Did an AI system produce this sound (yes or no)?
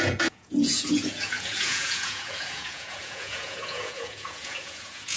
yes